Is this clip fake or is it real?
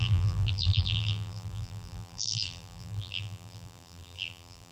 fake